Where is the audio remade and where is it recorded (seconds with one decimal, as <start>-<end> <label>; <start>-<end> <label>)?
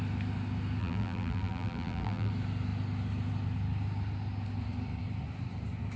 0.0-0.8 recorded; 0.8-2.3 remade; 2.3-6.0 recorded